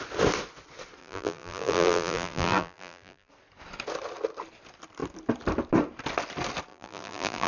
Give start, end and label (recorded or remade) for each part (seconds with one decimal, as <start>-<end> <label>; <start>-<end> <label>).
0.0-1.0 recorded; 1.0-3.3 remade; 3.3-6.7 recorded; 6.7-7.5 remade